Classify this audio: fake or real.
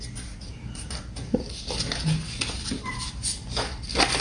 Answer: real